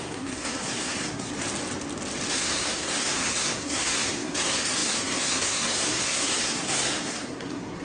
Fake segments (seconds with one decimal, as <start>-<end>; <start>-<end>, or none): 0.0-1.3; 2.3-7.8